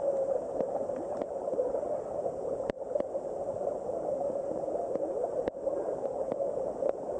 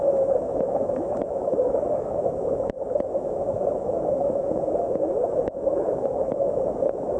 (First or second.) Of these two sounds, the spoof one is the second